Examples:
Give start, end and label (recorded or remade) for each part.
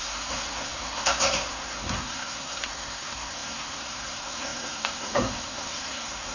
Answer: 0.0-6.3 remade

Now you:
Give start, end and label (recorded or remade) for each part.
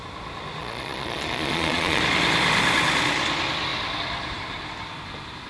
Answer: 0.0-0.6 recorded; 0.6-2.0 remade; 2.0-5.5 recorded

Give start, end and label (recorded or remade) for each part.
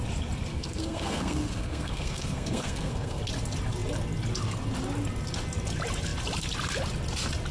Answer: 0.0-0.5 recorded; 0.5-3.2 remade; 3.2-7.5 recorded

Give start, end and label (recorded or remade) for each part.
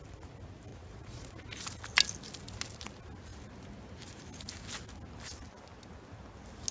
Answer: 0.0-0.7 recorded; 0.7-1.3 remade; 1.3-6.7 recorded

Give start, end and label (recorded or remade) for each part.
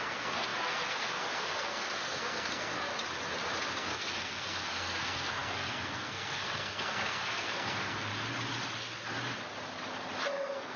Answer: 0.0-2.9 remade; 2.9-3.6 recorded; 3.6-8.1 remade; 8.1-10.2 recorded; 10.2-10.8 remade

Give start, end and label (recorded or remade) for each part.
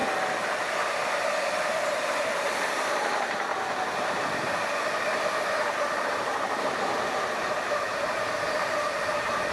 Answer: 0.0-1.7 recorded; 1.7-3.5 remade; 3.5-4.0 recorded; 4.0-4.6 remade; 4.6-5.9 recorded; 5.9-9.5 remade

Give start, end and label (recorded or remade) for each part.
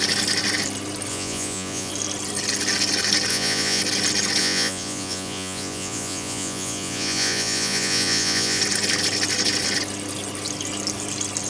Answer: 0.0-1.1 recorded; 1.1-1.9 remade; 1.9-3.3 recorded; 3.3-3.8 remade; 3.8-4.4 recorded; 4.4-8.6 remade; 8.6-11.5 recorded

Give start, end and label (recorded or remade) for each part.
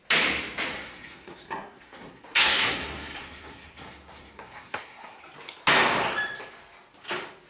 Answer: 0.0-0.7 recorded; 0.7-5.2 remade; 5.2-7.5 recorded